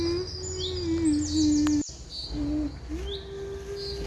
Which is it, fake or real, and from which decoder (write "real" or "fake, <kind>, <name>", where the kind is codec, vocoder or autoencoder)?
real